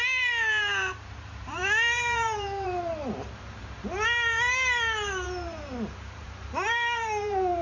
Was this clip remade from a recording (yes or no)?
yes